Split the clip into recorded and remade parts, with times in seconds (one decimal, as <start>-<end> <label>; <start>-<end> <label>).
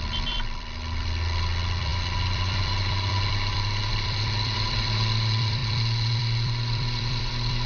0.0-7.7 remade